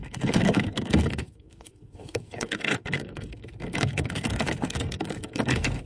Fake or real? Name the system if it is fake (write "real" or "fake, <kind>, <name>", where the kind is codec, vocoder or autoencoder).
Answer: fake, codec, SNAC